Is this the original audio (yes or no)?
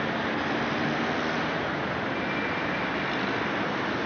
yes